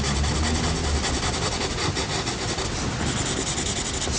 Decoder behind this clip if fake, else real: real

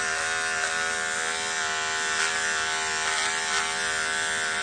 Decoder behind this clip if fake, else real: real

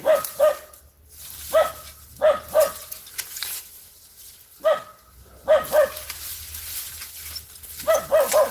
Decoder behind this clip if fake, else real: real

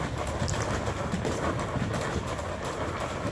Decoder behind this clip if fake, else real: real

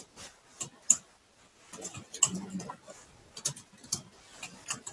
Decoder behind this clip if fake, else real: real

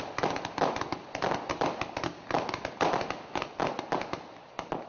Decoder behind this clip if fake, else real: real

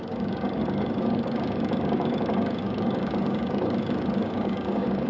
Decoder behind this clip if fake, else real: fake, codec, DAC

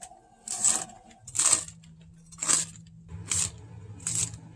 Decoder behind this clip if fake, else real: real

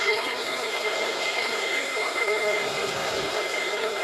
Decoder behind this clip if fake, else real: fake, codec, SNAC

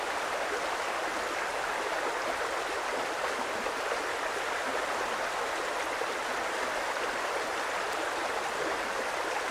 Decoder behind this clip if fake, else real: real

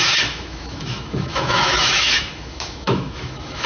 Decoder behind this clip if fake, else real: fake, autoencoder, DAC-VAE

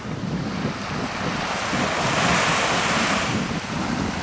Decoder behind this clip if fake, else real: real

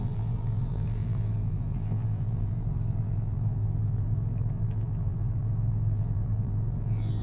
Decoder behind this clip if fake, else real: fake, vocoder, BigVGAN v2